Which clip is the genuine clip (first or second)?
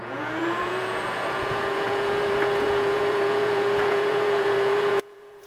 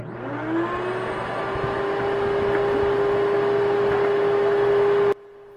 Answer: second